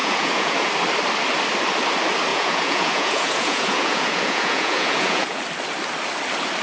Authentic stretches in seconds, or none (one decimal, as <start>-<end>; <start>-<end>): 0.7-2.3; 5.4-6.6